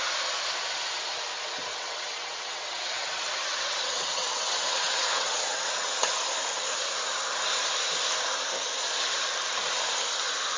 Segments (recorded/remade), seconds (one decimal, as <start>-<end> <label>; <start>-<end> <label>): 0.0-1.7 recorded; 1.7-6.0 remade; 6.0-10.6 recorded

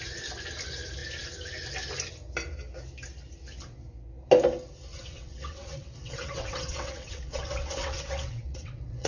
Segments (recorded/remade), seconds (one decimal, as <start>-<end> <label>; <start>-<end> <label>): 0.0-4.9 recorded; 4.9-9.1 remade

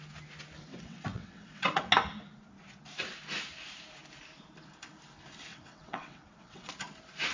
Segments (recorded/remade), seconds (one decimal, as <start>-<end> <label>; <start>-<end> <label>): 0.0-0.7 recorded; 0.7-1.9 remade; 1.9-5.5 recorded; 5.5-6.7 remade; 6.7-7.3 recorded